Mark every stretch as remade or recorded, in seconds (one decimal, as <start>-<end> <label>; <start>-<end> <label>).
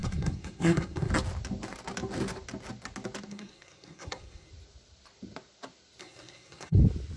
0.0-1.1 remade; 1.1-3.3 recorded; 3.3-4.5 remade; 4.5-6.0 recorded; 6.0-6.8 remade; 6.8-7.2 recorded